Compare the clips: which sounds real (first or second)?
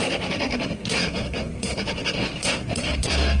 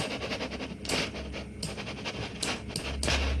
second